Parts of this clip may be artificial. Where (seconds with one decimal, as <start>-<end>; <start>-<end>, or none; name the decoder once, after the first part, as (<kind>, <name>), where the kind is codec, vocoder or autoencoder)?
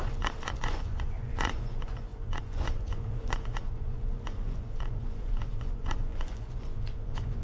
0.0-7.4 (vocoder, Vocos)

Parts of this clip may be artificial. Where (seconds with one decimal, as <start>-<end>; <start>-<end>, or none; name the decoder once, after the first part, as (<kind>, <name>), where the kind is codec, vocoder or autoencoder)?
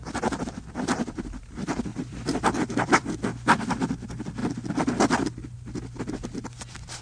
1.9-3.2 (vocoder, BigVGAN v2)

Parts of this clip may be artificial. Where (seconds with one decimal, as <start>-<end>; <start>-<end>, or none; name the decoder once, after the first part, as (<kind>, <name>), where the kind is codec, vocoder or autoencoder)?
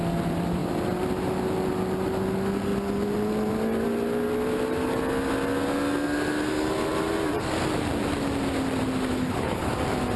9.1-9.7 (codec, HILCodec)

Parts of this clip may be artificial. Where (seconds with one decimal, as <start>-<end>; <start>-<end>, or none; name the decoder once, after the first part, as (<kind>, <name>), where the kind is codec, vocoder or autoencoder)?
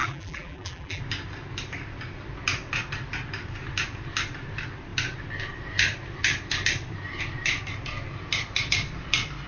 0.0-1.0 (vocoder, BigVGAN v2)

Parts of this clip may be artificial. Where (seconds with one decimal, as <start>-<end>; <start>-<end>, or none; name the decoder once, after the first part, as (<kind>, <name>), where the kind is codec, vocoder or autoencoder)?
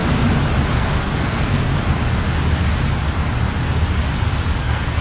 0.7-1.7 (codec, SNAC); 4.6-5.0